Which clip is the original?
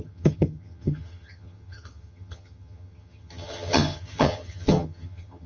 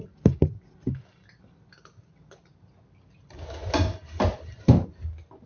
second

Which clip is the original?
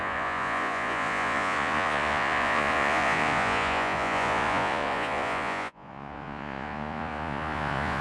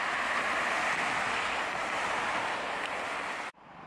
second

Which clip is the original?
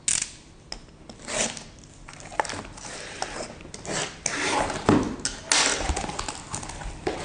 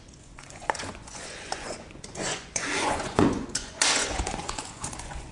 first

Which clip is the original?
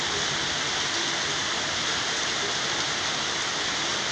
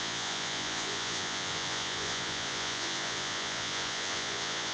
first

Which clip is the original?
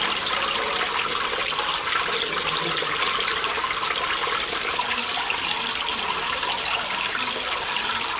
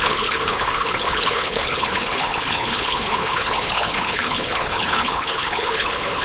first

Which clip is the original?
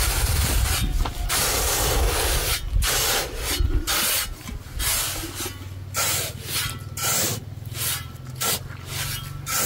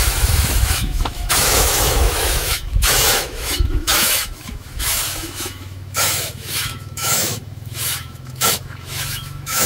first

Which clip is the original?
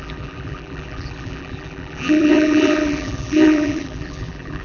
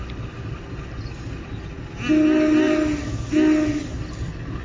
second